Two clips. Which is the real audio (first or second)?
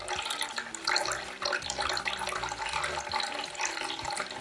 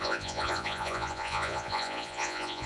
first